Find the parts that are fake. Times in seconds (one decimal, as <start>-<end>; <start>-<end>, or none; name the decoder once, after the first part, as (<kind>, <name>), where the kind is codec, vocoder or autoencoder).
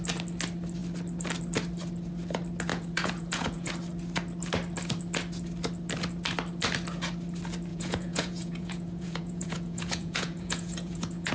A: 2.7-3.7 (vocoder, Vocos); 7.7-11.3